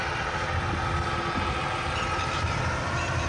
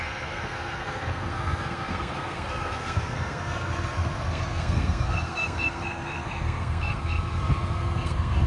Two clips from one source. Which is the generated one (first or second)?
second